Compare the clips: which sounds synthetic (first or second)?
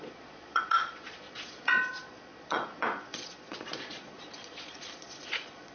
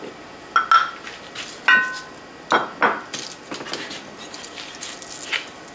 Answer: first